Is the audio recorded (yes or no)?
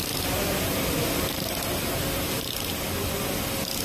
yes